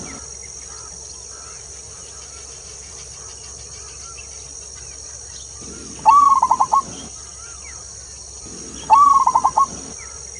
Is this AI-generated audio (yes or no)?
no